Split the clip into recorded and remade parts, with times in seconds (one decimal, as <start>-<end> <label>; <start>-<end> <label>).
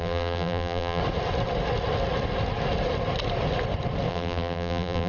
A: 0.0-1.0 remade; 1.0-4.1 recorded; 4.1-5.1 remade